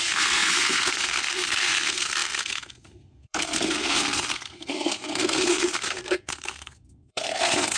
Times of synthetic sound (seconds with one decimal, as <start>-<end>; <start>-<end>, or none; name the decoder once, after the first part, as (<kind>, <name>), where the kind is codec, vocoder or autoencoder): 0.0-7.8 (codec, SNAC)

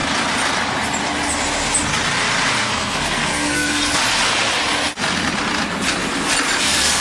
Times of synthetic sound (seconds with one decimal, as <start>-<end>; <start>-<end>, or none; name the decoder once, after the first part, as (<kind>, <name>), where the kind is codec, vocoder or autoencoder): 2.5-3.8 (codec, SNAC); 6.6-7.0

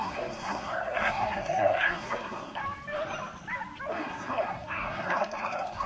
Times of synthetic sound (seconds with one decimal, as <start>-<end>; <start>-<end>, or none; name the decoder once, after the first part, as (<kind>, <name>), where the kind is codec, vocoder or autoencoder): 0.0-2.6 (codec, SNAC); 3.9-5.9

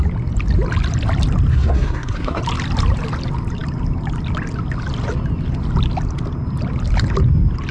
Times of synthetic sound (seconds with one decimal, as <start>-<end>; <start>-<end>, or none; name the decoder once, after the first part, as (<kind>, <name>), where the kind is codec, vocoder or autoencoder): 1.5-2.4 (codec, SNAC)

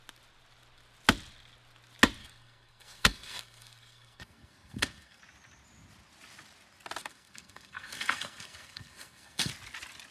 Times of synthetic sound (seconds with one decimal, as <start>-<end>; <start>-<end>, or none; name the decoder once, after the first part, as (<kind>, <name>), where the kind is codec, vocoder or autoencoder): 2.2-5.2 (codec, SNAC); 7.0-9.5